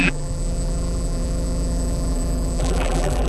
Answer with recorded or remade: remade